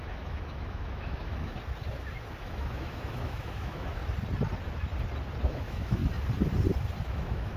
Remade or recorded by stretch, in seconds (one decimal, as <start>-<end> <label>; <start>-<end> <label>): 0.0-1.5 remade; 1.5-2.4 recorded; 2.4-4.0 remade; 4.0-5.4 recorded; 5.4-6.0 remade; 6.0-7.1 recorded; 7.1-7.6 remade